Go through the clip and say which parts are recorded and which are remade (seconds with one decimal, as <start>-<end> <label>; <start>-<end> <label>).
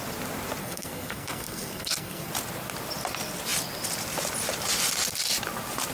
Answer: 0.0-0.6 recorded; 0.6-2.3 remade; 2.3-5.9 recorded